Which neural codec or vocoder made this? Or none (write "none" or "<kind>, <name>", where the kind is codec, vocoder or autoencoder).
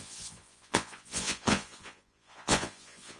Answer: vocoder, Vocos